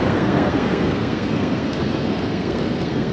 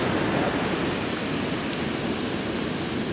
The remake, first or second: first